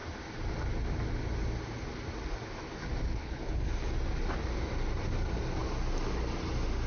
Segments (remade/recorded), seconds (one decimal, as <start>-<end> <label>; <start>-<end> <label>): 0.0-3.1 recorded; 3.1-3.7 remade; 3.7-6.9 recorded